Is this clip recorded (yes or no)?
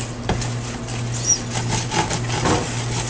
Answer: yes